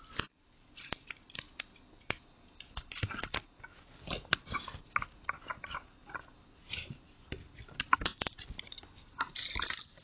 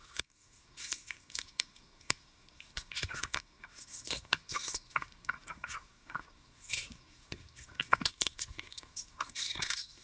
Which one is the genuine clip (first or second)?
first